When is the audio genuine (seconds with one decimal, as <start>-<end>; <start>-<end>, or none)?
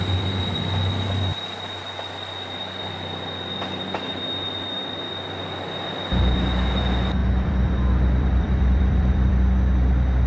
0.0-7.2; 9.3-10.3